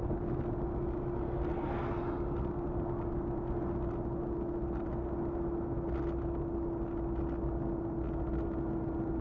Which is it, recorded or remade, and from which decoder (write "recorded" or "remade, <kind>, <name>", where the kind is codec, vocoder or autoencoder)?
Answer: recorded